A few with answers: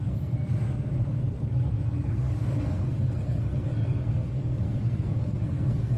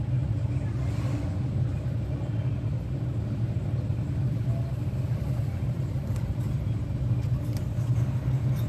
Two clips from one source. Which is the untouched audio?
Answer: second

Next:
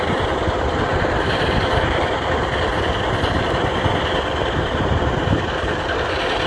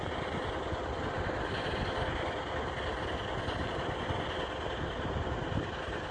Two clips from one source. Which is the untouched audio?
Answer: second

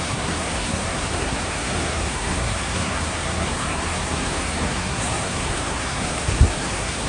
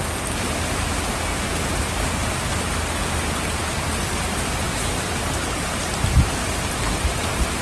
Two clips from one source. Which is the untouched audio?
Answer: second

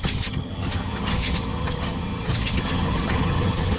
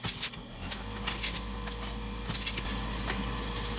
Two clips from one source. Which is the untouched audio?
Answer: second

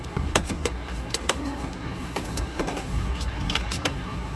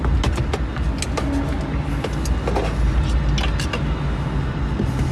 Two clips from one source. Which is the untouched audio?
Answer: second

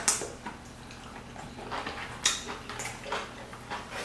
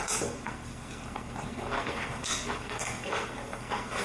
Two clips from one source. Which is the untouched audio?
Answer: first